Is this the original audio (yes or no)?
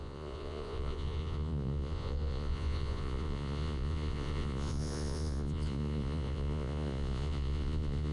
no